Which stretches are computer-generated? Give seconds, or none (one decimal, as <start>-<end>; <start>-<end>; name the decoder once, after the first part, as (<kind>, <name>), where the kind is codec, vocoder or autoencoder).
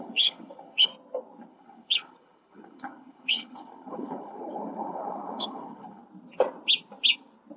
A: 0.0-0.9 (codec, HILCodec); 1.5-6.0